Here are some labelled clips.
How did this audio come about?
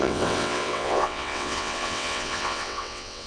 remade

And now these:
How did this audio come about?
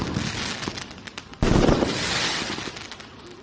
recorded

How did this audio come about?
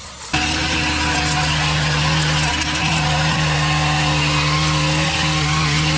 recorded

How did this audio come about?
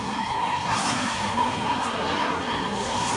remade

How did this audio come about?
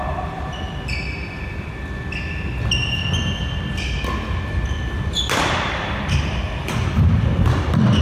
recorded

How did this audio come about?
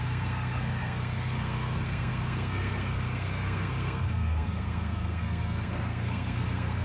remade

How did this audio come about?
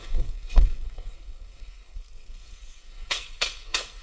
remade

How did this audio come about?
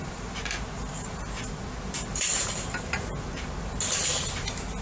recorded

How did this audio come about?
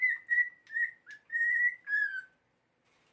recorded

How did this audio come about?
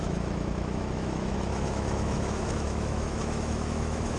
remade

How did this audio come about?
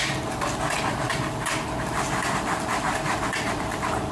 remade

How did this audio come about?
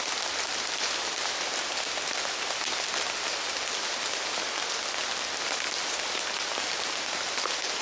recorded